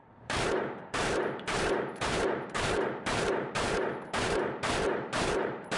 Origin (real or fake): fake